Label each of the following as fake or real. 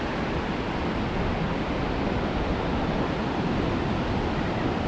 real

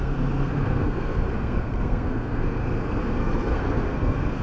fake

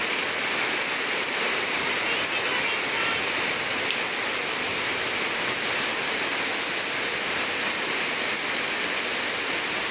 real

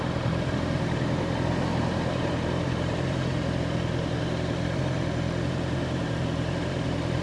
fake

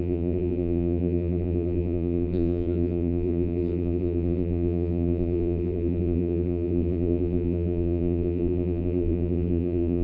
fake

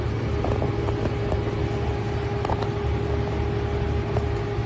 real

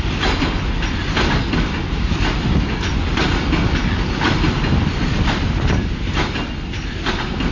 real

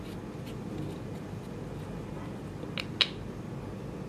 real